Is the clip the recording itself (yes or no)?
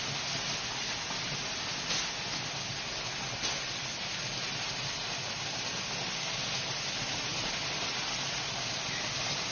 yes